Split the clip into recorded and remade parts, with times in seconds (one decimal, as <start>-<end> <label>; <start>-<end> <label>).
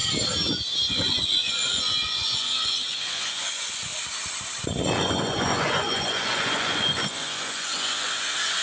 0.0-0.9 recorded; 0.9-3.9 remade; 3.9-5.0 recorded; 5.0-8.6 remade